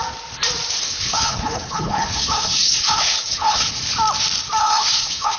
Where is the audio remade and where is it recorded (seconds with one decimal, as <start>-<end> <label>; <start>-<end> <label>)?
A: 0.0-0.8 recorded; 0.8-3.8 remade; 3.8-4.6 recorded; 4.6-5.4 remade